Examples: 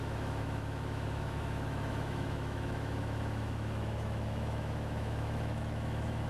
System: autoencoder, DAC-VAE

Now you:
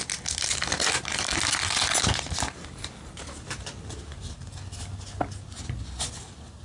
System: none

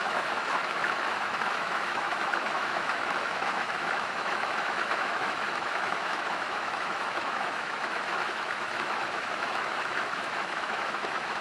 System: autoencoder, DAC-VAE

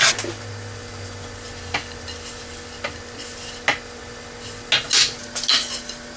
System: none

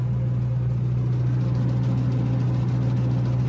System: none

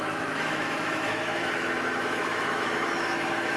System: autoencoder, DAC-VAE